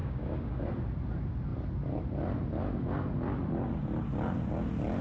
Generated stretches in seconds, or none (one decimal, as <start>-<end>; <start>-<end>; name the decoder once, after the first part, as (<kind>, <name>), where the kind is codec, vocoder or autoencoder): 0.0-0.7 (codec, DAC)